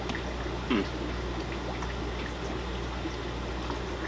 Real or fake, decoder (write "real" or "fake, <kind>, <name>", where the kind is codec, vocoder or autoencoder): real